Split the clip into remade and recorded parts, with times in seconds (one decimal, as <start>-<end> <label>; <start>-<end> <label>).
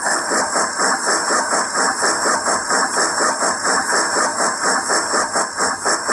0.0-6.1 recorded